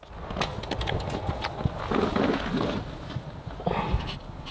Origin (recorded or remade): recorded